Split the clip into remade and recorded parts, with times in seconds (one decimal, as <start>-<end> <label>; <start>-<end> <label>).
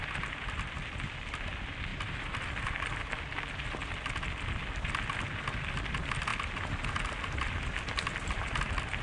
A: 0.0-1.9 recorded; 1.9-3.2 remade; 3.2-9.0 recorded